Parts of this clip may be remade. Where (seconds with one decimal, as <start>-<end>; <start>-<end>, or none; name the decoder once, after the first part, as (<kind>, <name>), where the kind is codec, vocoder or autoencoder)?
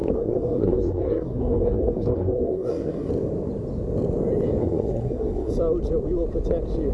0.0-3.1 (codec, SNAC); 4.6-5.5